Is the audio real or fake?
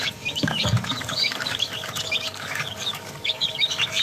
fake